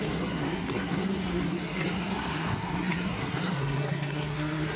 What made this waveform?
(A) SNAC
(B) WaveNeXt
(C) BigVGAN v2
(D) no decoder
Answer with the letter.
A